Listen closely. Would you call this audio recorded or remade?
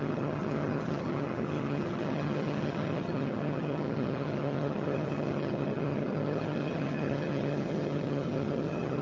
remade